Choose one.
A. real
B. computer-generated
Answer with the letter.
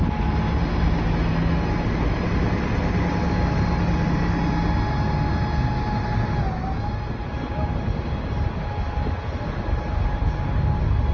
A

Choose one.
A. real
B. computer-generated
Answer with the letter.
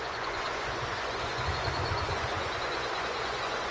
B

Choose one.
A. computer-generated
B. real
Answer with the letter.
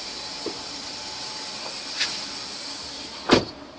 B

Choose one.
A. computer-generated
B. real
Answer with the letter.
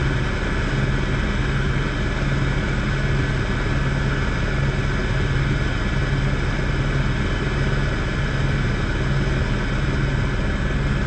B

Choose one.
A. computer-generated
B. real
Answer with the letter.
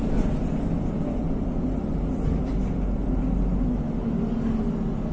B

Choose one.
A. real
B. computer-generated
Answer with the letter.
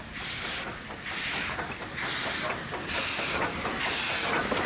A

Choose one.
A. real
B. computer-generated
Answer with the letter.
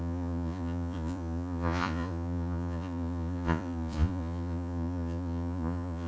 B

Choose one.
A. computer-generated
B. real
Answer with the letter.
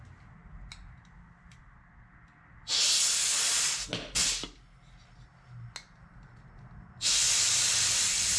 B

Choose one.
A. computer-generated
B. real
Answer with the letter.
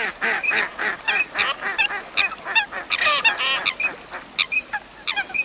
B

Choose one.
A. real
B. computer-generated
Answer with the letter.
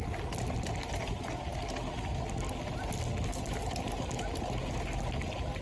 A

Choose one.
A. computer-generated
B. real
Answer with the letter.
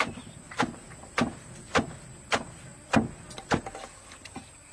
B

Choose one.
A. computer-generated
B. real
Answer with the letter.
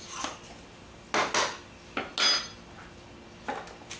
B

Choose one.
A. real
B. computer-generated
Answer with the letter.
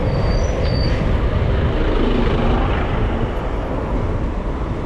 A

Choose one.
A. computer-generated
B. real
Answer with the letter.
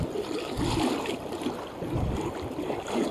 B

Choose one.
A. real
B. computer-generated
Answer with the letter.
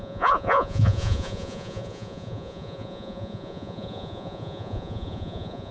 B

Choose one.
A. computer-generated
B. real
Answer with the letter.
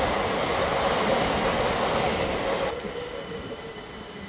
B